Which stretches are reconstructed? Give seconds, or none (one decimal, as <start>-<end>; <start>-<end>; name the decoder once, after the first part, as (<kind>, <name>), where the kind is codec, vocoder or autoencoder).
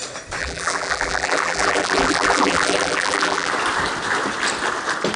0.4-3.5 (vocoder, BigVGAN v2)